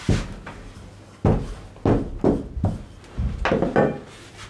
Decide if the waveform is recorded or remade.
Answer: recorded